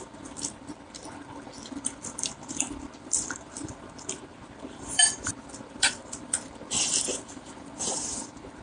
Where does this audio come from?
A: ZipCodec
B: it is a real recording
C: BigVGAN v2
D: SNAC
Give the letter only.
C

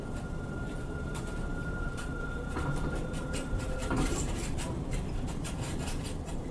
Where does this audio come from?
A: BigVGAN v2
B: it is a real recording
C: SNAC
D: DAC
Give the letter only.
A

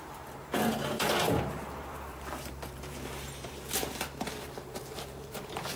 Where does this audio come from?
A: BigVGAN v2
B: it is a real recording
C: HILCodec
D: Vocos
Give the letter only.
A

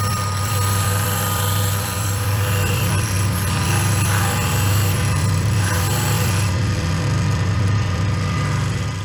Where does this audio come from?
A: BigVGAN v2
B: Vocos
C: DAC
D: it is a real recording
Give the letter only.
A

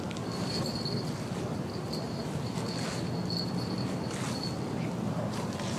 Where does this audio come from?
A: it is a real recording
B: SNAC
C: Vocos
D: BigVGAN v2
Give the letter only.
A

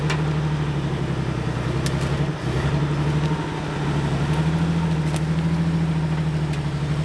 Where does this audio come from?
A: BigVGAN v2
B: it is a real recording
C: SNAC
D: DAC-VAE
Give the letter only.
B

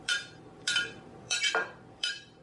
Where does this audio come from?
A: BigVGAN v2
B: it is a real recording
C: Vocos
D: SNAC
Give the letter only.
A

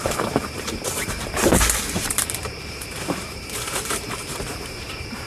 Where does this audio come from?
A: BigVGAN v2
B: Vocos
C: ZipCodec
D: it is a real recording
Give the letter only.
A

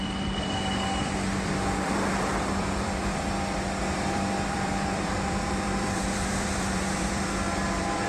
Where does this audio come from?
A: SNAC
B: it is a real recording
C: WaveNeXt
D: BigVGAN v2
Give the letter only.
D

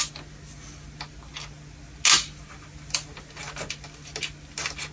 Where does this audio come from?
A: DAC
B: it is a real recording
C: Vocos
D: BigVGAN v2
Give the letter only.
B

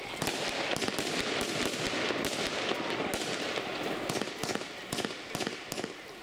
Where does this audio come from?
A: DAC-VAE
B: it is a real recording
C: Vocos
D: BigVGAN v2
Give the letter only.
B